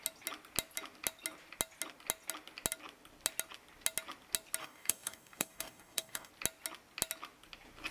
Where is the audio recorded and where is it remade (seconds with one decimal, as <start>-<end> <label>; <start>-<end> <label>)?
0.0-4.6 recorded; 4.6-6.3 remade; 6.3-7.9 recorded